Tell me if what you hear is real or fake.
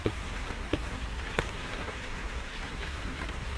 fake